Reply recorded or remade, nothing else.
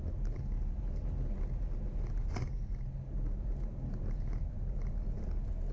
recorded